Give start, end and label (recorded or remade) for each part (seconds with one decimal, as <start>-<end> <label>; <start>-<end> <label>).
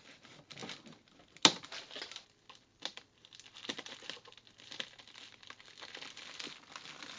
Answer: 0.0-7.2 recorded